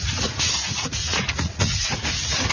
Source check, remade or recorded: remade